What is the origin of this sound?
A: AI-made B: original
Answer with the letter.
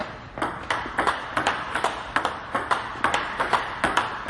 B